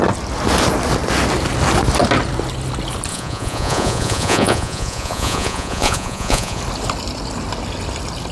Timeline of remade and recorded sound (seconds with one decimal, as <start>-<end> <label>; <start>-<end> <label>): 0.0-3.1 recorded; 3.1-6.6 remade; 6.6-8.3 recorded